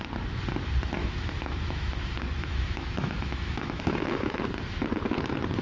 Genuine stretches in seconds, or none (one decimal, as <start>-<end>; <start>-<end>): 0.0-1.0; 4.4-5.6